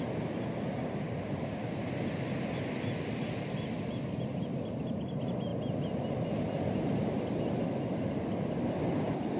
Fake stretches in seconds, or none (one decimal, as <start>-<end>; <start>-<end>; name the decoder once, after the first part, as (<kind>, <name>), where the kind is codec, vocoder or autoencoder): none